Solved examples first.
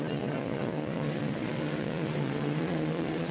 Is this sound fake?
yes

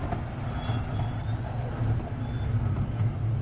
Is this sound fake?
no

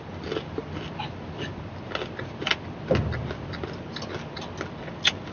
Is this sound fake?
no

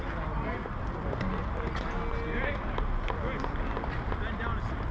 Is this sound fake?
no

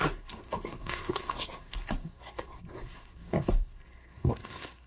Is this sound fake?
yes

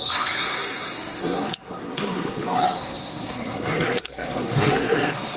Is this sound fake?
yes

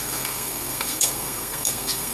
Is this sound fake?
yes